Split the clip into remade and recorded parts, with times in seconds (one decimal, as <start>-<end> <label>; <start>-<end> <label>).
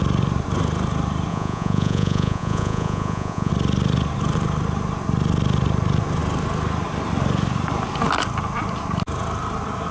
0.0-1.3 recorded; 1.3-3.5 remade; 3.5-9.9 recorded